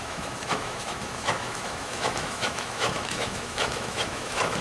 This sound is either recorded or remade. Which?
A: remade